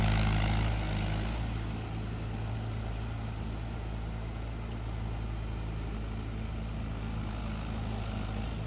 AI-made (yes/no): no